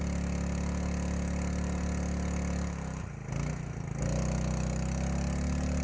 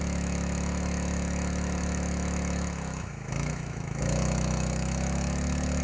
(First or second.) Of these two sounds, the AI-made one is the second